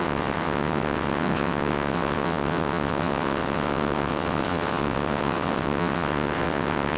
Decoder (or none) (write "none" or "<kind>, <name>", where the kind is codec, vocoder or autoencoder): vocoder, WaveNeXt